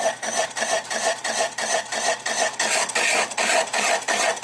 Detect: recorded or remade recorded